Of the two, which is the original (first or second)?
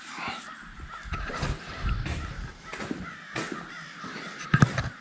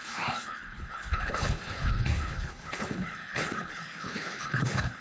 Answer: first